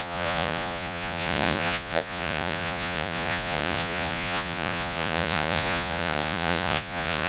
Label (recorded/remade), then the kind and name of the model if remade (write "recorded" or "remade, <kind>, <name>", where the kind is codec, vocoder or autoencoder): remade, vocoder, Vocos